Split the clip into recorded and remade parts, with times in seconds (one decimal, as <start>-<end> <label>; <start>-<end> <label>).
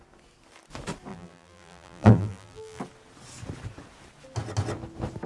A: 0.0-1.1 recorded; 1.1-2.8 remade; 2.8-5.3 recorded